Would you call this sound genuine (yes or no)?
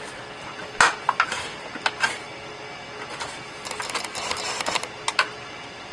yes